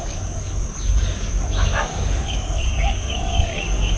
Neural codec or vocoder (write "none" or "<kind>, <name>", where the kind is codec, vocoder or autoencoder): codec, DAC